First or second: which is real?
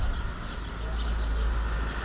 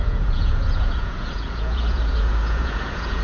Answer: first